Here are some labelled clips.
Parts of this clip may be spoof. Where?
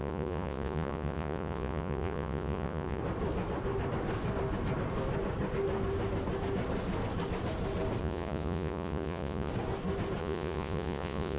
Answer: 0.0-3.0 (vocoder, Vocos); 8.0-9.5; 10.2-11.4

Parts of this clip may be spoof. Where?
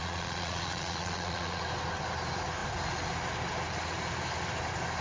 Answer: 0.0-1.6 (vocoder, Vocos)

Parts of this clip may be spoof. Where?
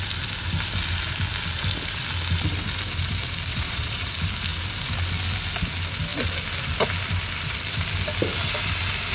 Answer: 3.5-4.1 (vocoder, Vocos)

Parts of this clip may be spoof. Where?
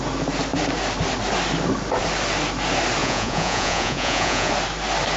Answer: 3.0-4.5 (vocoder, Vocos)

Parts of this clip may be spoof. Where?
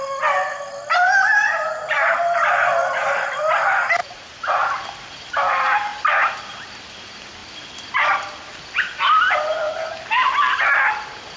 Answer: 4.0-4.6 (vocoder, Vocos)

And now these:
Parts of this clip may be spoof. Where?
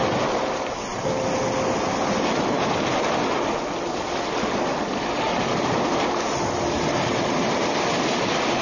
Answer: none